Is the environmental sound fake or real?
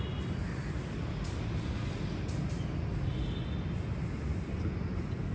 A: real